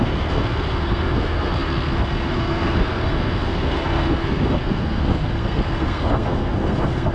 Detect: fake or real fake